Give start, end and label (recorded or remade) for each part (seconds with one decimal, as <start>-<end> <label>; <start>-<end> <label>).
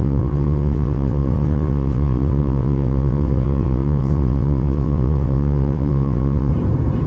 0.0-6.5 remade; 6.5-7.1 recorded